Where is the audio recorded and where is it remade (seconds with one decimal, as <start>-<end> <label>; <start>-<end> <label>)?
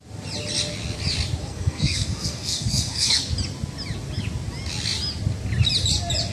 0.0-1.4 recorded; 1.4-3.3 remade; 3.3-6.3 recorded